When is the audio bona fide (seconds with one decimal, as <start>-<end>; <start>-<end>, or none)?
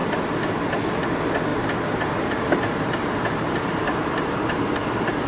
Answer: 0.6-1.5; 4.7-5.3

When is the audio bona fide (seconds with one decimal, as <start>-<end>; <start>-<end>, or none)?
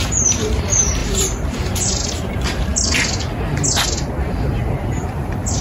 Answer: 2.7-4.2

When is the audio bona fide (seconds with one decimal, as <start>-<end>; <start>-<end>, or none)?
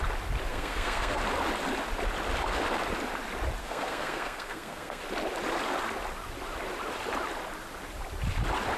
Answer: 0.0-0.5; 1.2-3.6; 5.0-8.8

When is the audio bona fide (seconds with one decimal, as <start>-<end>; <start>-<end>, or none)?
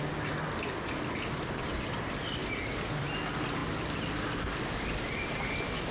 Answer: 0.0-3.6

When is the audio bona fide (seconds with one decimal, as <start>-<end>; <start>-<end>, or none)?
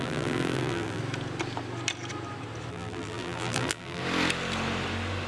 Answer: 1.0-2.7; 4.0-5.3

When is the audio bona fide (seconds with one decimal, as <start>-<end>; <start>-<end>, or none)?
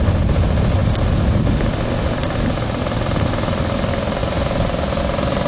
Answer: 0.0-4.2; 5.0-5.5